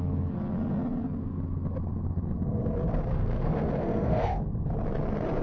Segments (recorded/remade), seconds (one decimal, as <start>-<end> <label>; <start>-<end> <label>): 0.0-2.9 recorded; 2.9-4.4 remade; 4.4-5.4 recorded